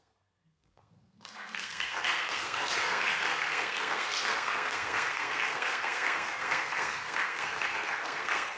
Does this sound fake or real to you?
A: fake